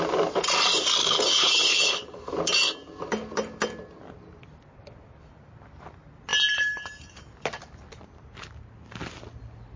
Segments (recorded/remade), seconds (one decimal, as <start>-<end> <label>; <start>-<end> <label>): 0.0-1.0 recorded; 1.0-2.3 remade; 2.3-9.8 recorded